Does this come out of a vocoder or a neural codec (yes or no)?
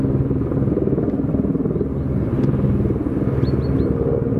no